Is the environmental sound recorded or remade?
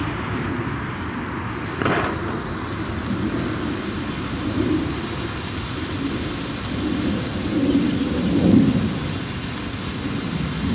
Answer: recorded